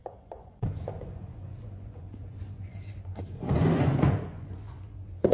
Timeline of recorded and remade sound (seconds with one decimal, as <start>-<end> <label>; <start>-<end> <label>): 0.0-5.3 remade